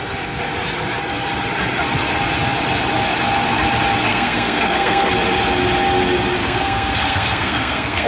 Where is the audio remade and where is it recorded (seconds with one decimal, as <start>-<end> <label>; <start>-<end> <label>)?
0.0-4.1 recorded; 4.1-5.1 remade; 5.1-6.4 recorded; 6.4-8.1 remade